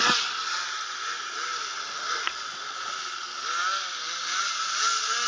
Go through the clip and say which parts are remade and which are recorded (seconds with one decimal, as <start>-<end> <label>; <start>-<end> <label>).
0.0-5.3 recorded